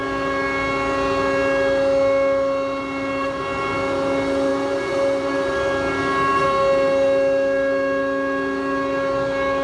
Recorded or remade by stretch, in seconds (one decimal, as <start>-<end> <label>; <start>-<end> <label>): 0.0-9.6 recorded